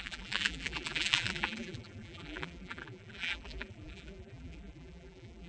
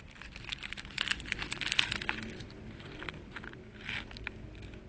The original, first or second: second